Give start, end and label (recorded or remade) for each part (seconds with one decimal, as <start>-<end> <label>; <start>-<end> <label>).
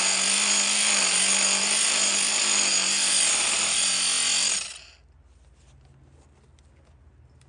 0.0-7.5 recorded